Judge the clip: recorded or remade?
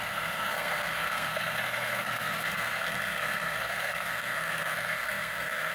remade